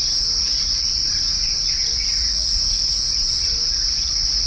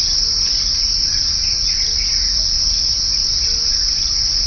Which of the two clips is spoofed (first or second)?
first